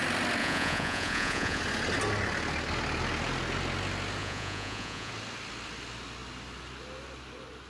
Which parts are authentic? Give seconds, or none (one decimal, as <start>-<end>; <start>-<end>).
0.0-0.4; 1.6-4.2; 5.1-7.7